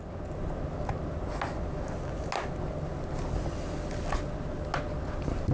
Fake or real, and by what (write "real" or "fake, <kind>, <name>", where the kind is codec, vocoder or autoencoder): real